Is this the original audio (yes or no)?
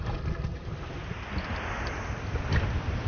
yes